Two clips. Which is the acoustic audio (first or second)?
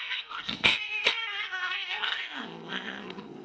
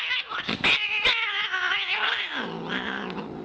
second